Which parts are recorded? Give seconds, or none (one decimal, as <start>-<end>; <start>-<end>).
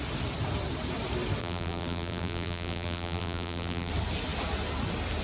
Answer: 0.0-1.4; 3.9-5.2